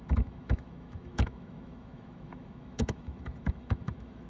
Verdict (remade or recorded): remade